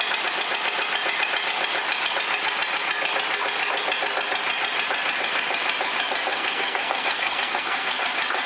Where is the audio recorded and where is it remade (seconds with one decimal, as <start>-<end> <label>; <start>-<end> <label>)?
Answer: 0.0-6.3 recorded; 6.3-8.0 remade; 8.0-8.5 recorded